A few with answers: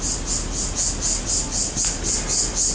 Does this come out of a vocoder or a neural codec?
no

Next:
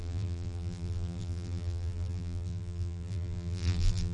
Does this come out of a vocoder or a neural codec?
yes